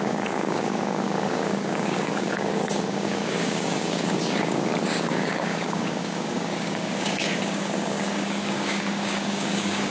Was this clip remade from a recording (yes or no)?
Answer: yes